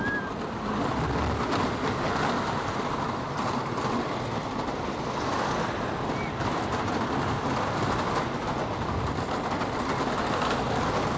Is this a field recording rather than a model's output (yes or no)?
yes